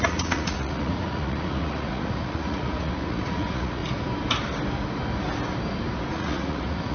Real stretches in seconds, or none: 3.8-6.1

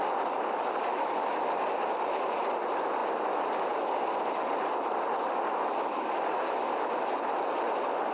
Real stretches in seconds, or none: 0.0-8.1

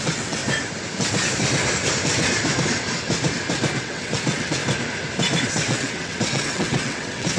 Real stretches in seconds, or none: 0.4-3.8; 4.6-5.4

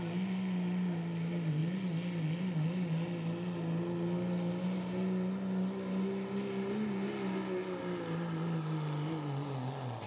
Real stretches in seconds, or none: 0.0-10.1

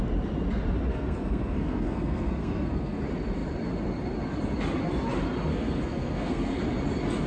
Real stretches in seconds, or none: 0.0-0.9; 3.0-5.5; 6.6-7.3

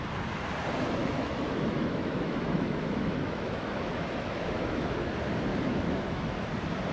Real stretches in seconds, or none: 0.0-1.0; 5.1-5.5; 6.5-6.9

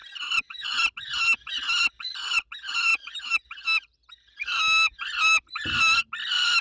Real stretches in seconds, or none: 0.0-6.6